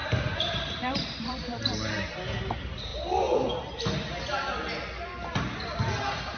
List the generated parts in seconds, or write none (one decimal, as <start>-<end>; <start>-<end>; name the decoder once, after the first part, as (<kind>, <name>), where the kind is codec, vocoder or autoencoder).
0.0-1.9 (vocoder, BigVGAN v2)